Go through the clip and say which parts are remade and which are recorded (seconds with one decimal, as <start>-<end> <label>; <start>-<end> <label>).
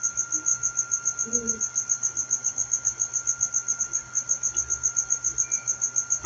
0.0-6.3 recorded